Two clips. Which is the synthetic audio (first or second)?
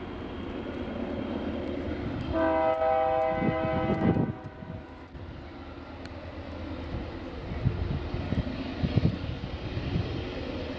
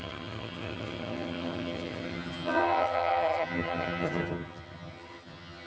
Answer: second